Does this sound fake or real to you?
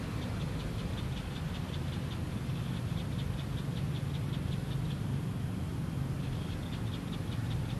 real